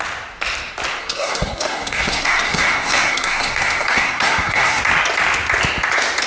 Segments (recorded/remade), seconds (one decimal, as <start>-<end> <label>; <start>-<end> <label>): 0.0-1.0 recorded; 1.0-4.8 remade; 4.8-6.3 recorded